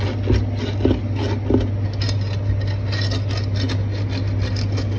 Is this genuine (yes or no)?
yes